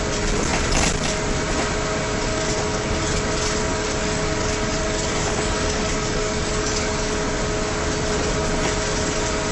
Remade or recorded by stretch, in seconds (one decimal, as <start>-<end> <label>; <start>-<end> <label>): 0.0-2.3 recorded; 2.3-3.0 remade; 3.0-3.7 recorded; 3.7-7.3 remade; 7.3-9.5 recorded